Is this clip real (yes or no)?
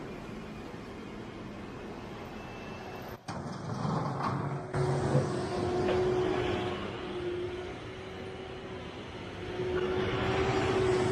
yes